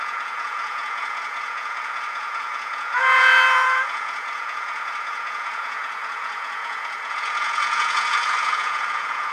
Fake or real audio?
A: fake